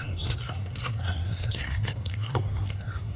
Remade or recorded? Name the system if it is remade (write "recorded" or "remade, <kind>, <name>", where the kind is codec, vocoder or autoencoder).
remade, codec, SNAC